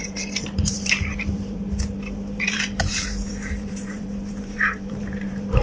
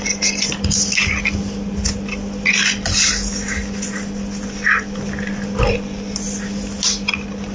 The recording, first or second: second